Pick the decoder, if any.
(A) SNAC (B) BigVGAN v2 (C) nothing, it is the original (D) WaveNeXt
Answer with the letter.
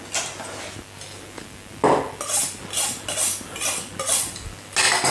C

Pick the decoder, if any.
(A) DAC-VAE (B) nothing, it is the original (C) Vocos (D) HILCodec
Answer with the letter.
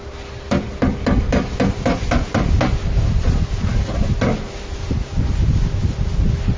B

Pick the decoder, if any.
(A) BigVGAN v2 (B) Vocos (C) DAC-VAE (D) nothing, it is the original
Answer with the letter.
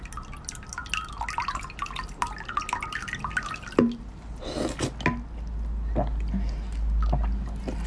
D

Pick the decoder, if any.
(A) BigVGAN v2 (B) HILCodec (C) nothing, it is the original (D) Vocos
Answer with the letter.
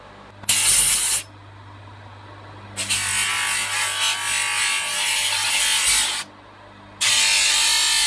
C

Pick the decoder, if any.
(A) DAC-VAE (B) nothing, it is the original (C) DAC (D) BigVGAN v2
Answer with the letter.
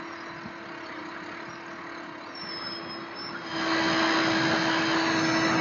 B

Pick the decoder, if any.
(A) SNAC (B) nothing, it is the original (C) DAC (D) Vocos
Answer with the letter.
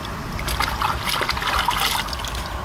B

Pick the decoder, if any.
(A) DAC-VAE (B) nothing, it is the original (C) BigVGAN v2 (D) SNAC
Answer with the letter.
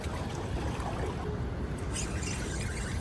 B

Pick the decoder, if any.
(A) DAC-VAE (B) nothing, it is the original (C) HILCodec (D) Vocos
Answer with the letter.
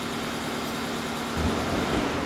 B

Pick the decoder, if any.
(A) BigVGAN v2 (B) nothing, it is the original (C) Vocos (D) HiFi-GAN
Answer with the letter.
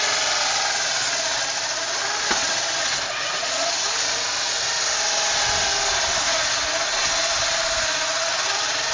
B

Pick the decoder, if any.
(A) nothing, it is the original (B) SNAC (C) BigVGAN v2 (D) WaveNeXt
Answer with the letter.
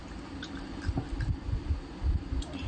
A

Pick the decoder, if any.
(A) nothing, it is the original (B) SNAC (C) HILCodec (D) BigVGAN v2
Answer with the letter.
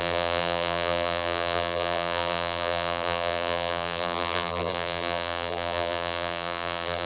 D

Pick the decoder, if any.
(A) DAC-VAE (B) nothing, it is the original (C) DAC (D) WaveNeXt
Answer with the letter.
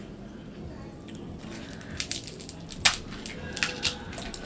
B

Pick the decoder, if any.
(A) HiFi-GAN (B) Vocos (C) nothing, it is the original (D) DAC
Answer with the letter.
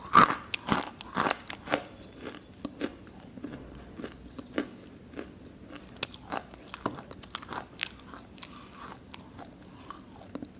C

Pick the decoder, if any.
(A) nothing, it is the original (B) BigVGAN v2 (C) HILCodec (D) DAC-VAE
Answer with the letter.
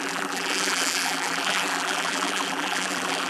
B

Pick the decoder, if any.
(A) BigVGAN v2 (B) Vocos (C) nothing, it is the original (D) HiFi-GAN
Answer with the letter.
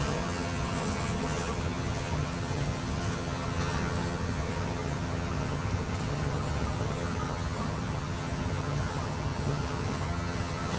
D